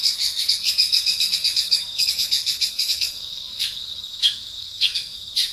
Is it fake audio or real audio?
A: fake